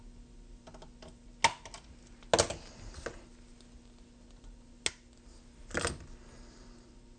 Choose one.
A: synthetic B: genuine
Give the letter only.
B